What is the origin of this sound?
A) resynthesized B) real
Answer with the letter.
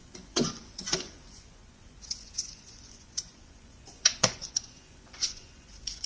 A